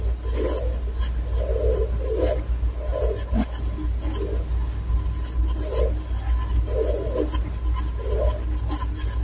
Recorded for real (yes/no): yes